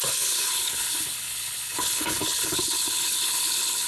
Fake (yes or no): yes